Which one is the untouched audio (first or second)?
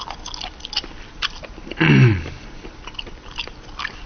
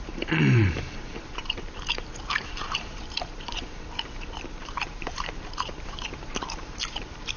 first